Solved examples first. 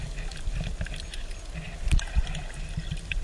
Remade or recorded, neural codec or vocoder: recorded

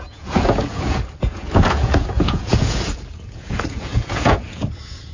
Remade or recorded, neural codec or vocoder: remade, vocoder, Vocos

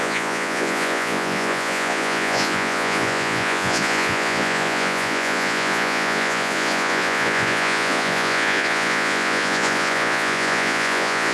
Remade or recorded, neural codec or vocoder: remade, vocoder, Vocos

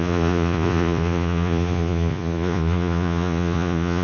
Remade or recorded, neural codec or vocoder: remade, vocoder, Vocos